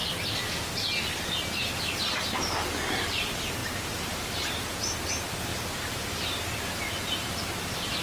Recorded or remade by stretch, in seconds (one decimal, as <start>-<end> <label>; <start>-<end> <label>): 0.0-3.6 recorded; 3.6-4.7 remade; 4.7-5.5 recorded; 5.5-8.0 remade